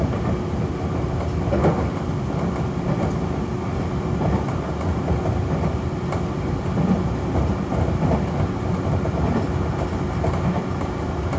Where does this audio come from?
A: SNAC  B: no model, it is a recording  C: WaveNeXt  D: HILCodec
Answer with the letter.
B